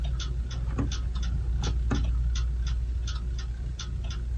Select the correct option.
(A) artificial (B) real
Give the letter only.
B